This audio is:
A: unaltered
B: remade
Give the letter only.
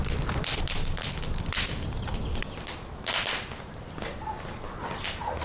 A